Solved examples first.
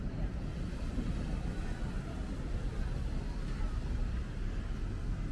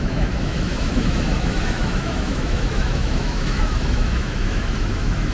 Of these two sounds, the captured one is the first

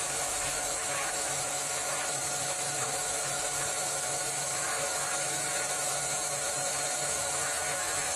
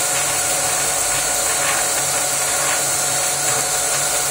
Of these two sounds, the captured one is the second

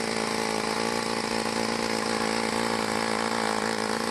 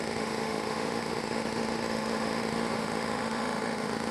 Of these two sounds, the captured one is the first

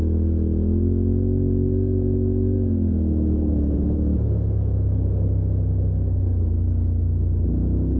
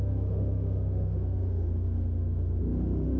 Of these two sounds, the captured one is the first